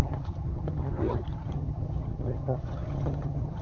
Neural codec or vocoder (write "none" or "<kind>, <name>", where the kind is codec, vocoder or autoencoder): vocoder, HiFi-GAN